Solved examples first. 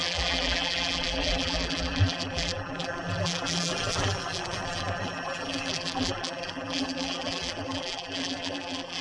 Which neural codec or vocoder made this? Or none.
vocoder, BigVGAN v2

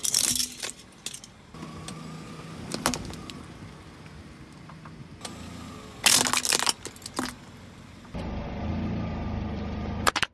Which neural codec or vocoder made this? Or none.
none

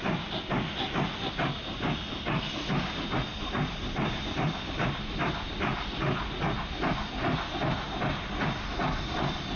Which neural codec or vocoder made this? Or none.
none